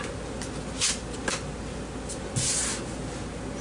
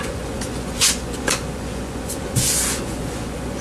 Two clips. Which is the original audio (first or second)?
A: first